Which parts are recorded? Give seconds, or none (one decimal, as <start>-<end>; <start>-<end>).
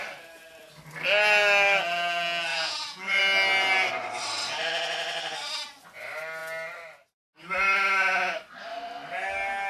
0.0-2.5; 3.2-9.7